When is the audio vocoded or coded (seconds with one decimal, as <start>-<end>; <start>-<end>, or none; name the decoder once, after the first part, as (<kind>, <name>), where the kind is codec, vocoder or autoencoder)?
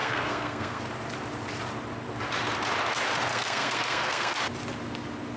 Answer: 0.0-0.8 (codec, SNAC); 3.3-4.4